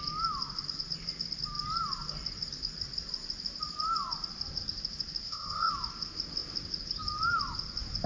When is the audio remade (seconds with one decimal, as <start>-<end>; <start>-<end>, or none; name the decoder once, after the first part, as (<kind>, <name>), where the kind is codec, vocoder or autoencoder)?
5.2-5.7 (codec, ZipCodec)